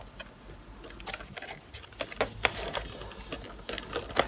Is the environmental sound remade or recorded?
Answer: recorded